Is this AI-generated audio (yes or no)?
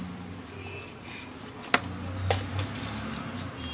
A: no